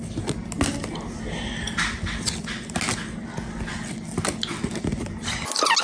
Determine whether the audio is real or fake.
real